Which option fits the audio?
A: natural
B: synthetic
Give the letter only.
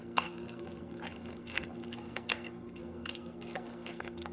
B